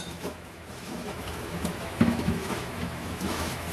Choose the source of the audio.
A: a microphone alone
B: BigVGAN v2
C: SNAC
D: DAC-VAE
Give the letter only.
D